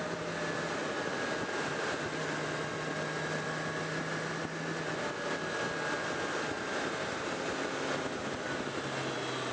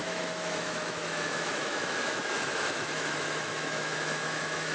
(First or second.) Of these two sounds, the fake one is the second